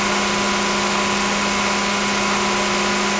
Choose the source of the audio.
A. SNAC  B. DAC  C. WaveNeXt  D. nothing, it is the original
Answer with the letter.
D